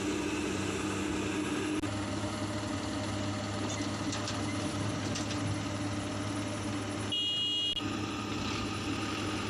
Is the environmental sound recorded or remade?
recorded